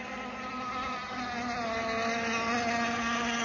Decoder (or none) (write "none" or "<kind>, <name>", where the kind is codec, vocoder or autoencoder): none